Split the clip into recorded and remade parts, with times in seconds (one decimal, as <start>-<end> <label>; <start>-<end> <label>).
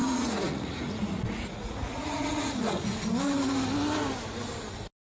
0.0-3.0 remade; 3.0-5.0 recorded